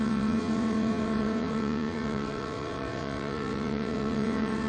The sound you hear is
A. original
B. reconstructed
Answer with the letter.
B